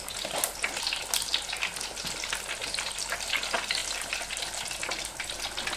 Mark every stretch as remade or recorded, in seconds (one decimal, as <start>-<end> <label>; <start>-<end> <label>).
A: 0.0-5.8 recorded